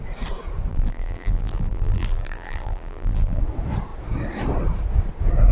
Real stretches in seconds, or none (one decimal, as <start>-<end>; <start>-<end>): 0.0-0.7; 3.4-5.5

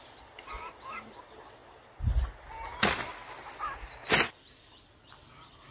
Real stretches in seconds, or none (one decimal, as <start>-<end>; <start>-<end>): 1.6-2.1; 2.7-4.5

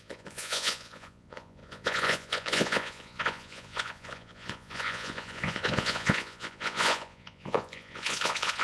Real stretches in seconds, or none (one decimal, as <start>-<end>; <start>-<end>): none

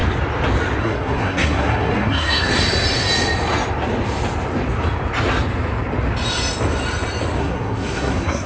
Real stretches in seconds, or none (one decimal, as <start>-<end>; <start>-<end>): 0.0-0.8; 2.5-7.4

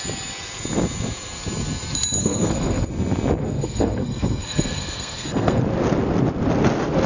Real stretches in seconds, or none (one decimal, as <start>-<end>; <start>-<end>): 0.0-2.2; 2.9-3.4; 5.6-7.1

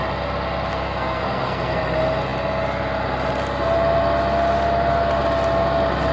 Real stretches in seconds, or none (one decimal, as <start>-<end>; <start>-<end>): 0.0-0.7; 1.8-6.1

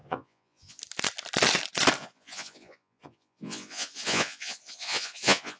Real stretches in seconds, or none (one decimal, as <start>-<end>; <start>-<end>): 0.8-2.0